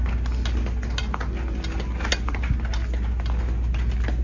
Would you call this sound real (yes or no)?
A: yes